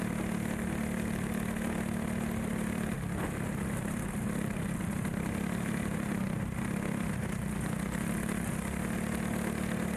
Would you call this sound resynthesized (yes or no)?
no